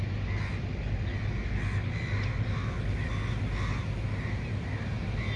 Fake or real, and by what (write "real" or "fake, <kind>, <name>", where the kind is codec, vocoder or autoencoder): real